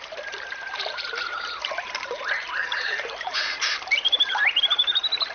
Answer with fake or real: fake